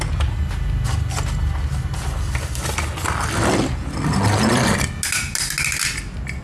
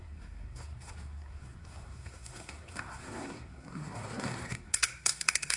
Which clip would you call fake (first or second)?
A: second